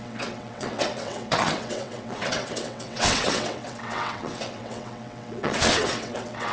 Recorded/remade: remade